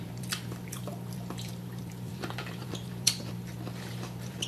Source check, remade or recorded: remade